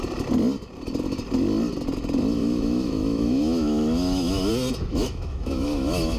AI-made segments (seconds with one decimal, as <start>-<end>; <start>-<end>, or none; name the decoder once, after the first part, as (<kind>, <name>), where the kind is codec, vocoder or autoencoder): 2.4-4.5 (autoencoder, DAC-VAE); 4.9-6.2